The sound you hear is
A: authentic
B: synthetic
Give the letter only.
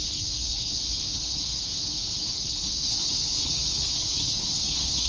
B